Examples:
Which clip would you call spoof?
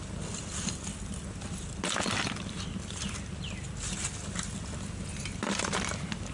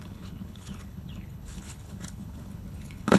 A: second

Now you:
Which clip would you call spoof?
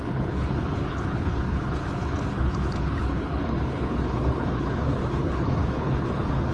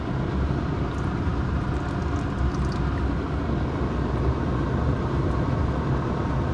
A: first